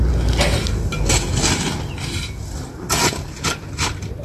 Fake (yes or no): no